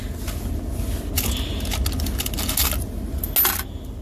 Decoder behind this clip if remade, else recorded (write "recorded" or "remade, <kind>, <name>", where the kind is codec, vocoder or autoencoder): recorded